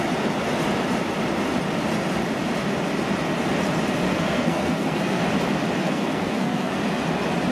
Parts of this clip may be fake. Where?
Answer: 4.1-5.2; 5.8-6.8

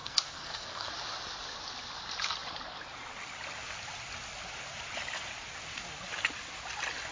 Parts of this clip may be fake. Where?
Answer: 0.0-0.9

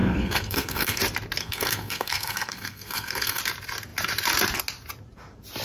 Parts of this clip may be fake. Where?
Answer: 0.0-1.0; 1.4-3.4